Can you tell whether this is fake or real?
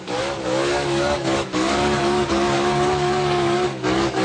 fake